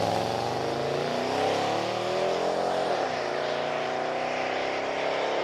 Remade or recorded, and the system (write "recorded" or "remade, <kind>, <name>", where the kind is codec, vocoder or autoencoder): recorded